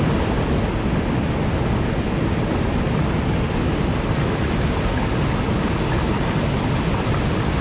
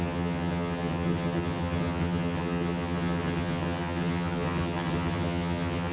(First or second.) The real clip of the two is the first